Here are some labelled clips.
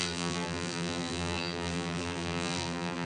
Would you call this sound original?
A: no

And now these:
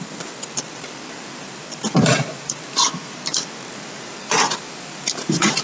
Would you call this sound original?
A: no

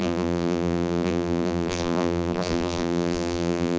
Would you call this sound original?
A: no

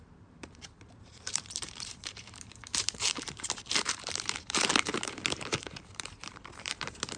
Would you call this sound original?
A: no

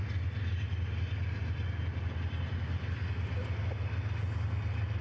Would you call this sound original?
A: yes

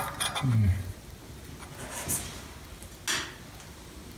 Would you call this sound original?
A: yes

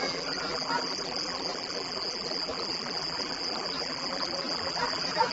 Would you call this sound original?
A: no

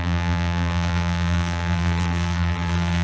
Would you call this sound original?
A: no